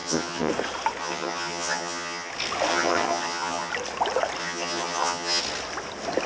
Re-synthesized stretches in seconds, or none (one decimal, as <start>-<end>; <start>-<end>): 0.0-0.5; 1.0-2.3; 2.7-3.7; 4.4-5.4